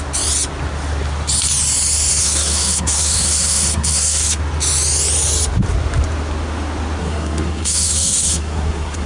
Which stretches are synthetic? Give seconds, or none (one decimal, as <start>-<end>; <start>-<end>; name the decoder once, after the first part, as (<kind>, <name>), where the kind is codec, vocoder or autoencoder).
2.2-4.4 (codec, SNAC); 7.0-9.1